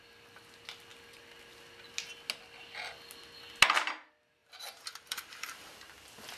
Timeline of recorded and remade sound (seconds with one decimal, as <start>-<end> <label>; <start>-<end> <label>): 0.0-4.4 recorded; 4.4-5.7 remade; 5.7-6.4 recorded